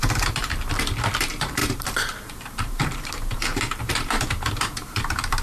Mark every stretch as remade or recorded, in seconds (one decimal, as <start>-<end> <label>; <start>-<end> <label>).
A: 0.0-0.4 remade; 0.4-1.2 recorded; 1.2-5.4 remade